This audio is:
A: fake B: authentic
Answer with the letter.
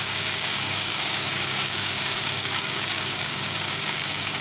A